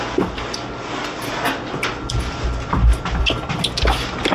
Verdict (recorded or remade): recorded